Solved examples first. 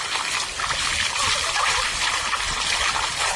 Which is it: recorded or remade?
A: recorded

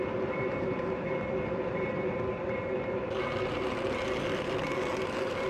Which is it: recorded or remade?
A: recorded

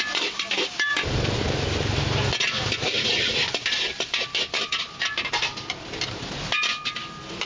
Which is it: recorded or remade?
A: recorded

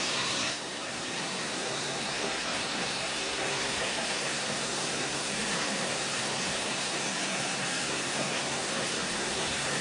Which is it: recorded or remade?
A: remade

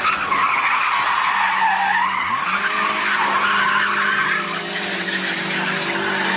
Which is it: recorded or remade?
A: recorded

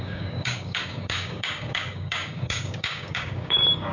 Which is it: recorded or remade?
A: remade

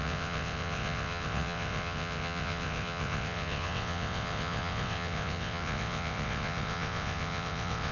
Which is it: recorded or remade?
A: remade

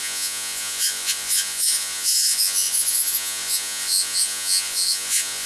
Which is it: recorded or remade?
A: remade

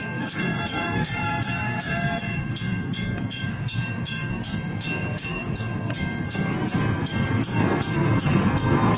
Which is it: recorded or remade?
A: remade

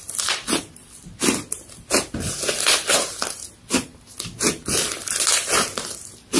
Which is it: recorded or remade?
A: recorded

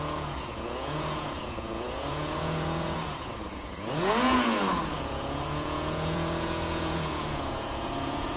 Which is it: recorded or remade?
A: remade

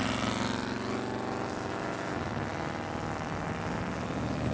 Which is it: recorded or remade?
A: recorded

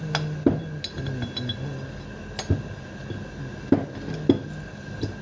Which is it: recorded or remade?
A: recorded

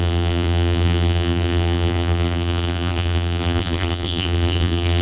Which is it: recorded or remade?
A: remade